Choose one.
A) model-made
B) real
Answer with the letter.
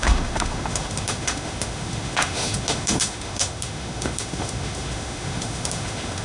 A